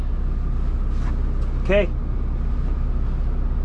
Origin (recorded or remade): recorded